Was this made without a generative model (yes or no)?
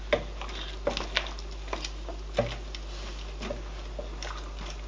yes